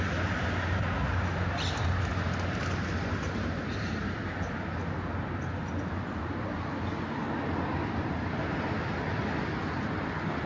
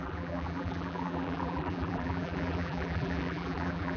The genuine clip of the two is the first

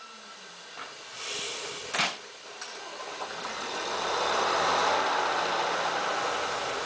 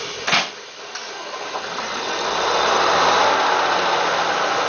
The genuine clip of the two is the second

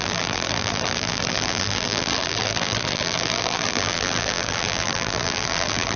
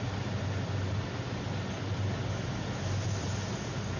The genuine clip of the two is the second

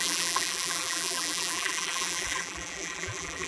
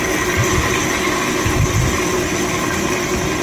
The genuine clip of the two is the second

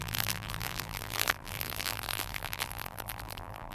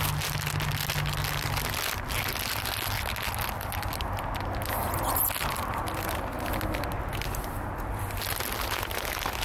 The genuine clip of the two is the second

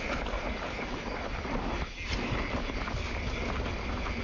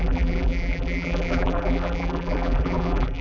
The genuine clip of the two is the first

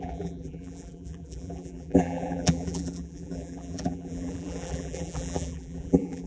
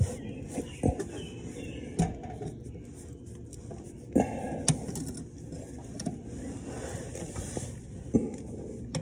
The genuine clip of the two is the second